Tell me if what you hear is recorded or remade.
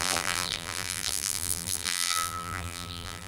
remade